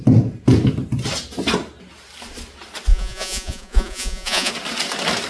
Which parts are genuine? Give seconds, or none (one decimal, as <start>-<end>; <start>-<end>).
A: 0.0-2.9; 4.5-5.3